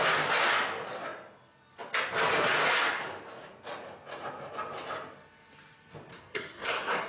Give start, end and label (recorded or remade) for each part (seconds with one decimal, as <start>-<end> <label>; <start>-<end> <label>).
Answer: 0.0-6.1 recorded; 6.1-7.1 remade